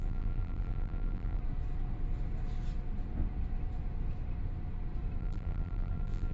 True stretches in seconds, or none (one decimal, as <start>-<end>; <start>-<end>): 1.4-5.2